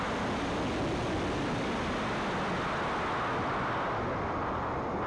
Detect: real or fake real